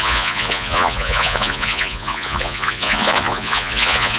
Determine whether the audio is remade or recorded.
remade